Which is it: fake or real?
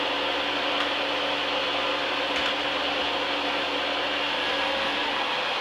real